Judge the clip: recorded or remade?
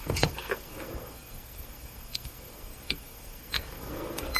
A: remade